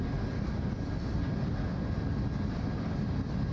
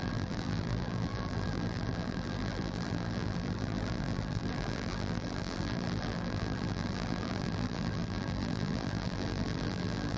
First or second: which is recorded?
first